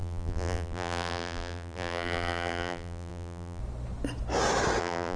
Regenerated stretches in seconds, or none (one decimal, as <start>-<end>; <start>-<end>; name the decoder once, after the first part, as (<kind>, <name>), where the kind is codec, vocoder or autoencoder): 0.0-3.6 (vocoder, BigVGAN v2); 4.8-5.2